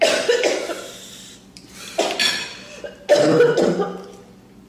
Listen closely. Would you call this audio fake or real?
real